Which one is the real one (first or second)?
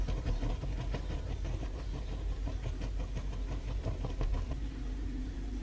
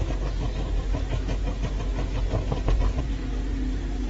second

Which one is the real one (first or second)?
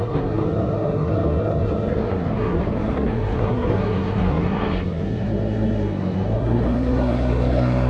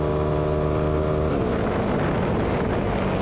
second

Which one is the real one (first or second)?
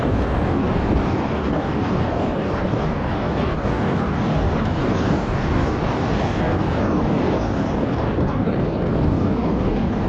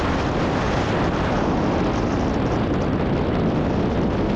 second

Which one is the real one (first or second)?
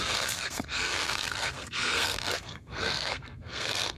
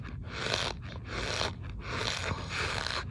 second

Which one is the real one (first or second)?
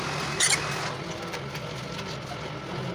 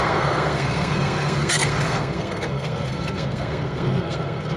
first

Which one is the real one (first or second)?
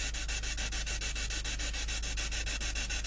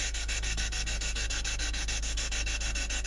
first